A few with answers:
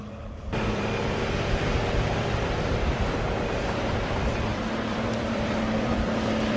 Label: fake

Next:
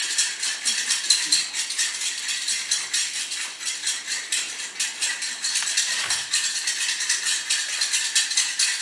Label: real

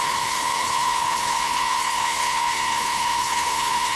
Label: fake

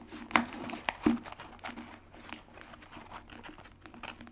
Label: real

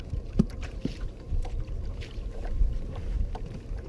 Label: fake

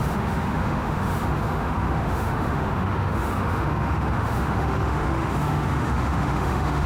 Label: fake